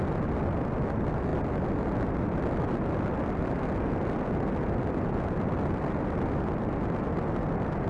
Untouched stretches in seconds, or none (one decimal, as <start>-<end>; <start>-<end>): 0.0-7.9